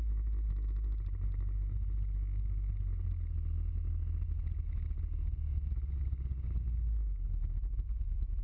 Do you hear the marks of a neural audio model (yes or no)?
no